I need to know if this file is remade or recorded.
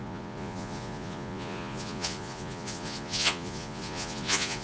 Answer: remade